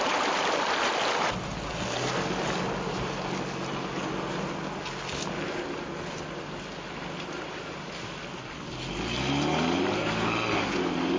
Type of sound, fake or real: real